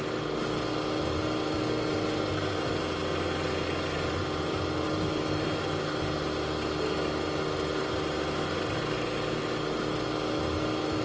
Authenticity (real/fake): real